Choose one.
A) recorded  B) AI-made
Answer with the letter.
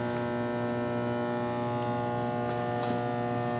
A